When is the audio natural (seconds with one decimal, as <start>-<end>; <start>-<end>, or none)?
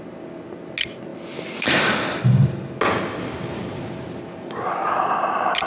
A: 0.0-5.7